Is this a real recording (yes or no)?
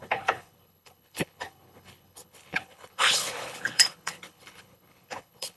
no